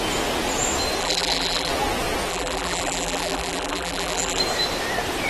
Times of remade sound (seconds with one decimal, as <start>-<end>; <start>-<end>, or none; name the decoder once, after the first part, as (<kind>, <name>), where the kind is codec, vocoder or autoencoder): 1.0-1.7 (vocoder, BigVGAN v2); 2.3-4.4

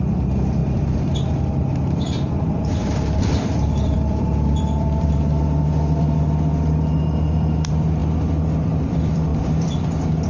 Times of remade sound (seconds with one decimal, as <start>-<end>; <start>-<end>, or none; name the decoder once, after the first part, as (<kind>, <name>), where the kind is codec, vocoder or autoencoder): 0.0-8.0 (vocoder, BigVGAN v2); 8.6-10.3

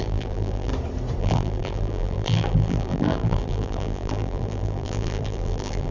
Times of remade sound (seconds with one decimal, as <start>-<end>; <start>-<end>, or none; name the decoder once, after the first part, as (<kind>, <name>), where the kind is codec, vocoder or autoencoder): 0.0-0.7 (vocoder, BigVGAN v2); 1.2-5.9

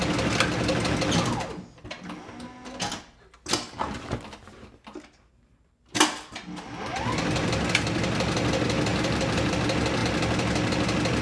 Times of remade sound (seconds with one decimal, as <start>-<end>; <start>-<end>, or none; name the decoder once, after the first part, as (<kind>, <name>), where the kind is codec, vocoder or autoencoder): 8.9-9.5 (vocoder, BigVGAN v2)

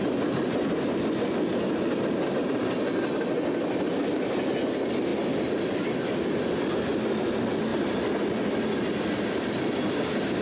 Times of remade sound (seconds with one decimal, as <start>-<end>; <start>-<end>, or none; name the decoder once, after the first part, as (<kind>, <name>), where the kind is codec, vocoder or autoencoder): none

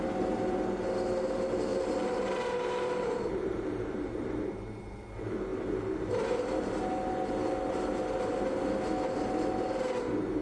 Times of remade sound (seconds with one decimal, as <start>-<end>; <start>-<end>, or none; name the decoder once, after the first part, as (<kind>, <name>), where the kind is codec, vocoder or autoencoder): 1.7-5.1 (vocoder, BigVGAN v2)

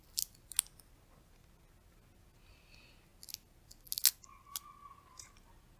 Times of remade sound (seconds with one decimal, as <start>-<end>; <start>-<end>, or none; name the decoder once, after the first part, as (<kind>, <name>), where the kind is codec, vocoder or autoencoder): none